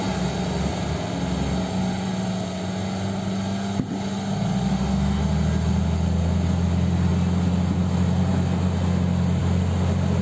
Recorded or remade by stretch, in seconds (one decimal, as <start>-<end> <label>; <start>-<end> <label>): 0.0-4.7 recorded; 4.7-5.2 remade; 5.2-10.2 recorded

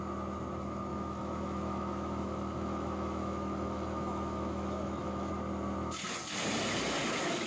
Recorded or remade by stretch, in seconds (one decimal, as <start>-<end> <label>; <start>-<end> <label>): 0.0-0.9 recorded; 0.9-5.3 remade; 5.3-7.5 recorded

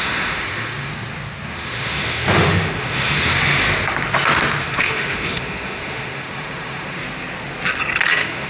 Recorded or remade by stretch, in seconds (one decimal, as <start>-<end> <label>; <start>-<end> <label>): 0.0-0.9 remade; 0.9-1.5 recorded; 1.5-3.3 remade; 3.3-4.6 recorded; 4.6-7.0 remade; 7.0-8.1 recorded; 8.1-8.5 remade

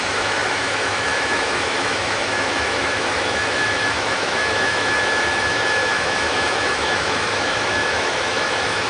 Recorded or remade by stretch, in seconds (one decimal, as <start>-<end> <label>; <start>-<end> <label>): 0.0-8.9 remade

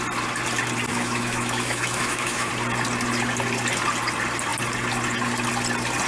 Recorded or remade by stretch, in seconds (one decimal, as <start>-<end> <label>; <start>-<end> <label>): 0.0-0.9 recorded; 0.9-2.5 remade; 2.5-6.1 recorded

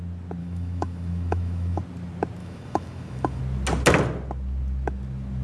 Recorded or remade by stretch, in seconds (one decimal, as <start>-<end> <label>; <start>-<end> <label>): 0.0-0.4 recorded; 0.4-1.8 remade; 1.8-2.4 recorded; 2.4-3.4 remade; 3.4-5.4 recorded